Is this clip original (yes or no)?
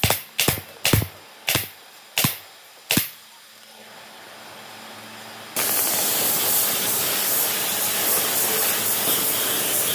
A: yes